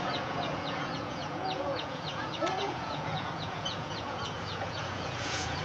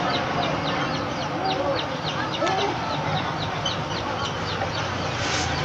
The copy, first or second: first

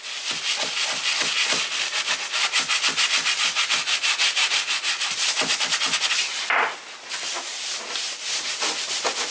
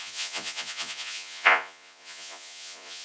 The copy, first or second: second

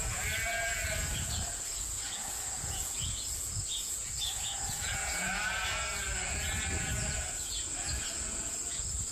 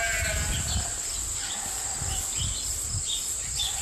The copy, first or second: first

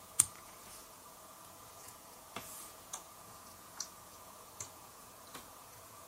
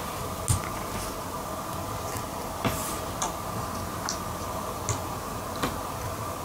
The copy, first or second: first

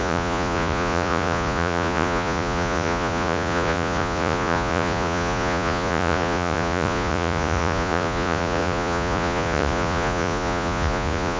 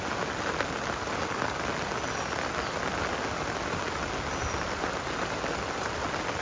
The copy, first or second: first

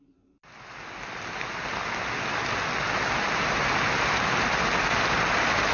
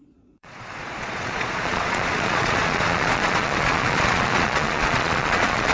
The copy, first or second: second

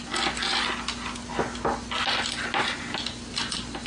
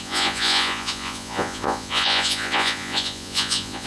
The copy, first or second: second